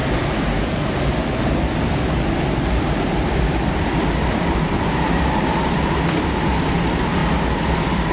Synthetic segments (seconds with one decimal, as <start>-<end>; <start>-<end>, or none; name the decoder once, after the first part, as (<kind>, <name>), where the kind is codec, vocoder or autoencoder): 2.7-7.2 (vocoder, BigVGAN v2)